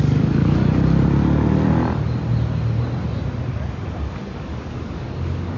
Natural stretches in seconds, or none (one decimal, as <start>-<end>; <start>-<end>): 0.6-4.0

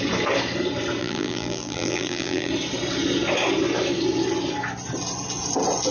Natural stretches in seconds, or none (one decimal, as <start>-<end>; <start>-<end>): 0.0-1.0; 2.5-5.9

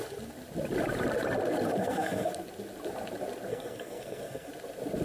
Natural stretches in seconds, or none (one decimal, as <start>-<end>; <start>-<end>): 0.0-1.8; 2.3-3.5; 4.5-5.0

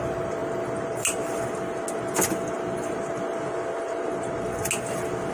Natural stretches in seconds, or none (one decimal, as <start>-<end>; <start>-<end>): 0.0-5.3

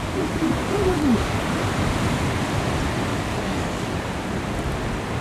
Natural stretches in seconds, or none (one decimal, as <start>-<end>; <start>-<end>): 0.0-0.6; 1.5-3.1; 4.1-5.2

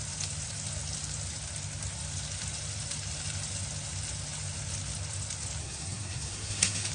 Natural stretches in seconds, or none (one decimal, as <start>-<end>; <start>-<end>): 0.0-5.6

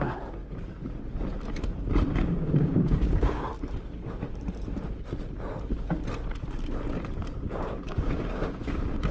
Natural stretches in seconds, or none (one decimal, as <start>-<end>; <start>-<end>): 0.4-2.1; 3.5-7.5